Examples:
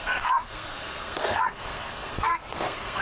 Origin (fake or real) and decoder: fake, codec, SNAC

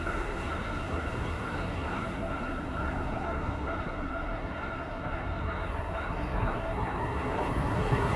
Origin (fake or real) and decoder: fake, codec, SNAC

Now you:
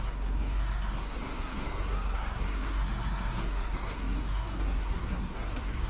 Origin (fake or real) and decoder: fake, codec, SNAC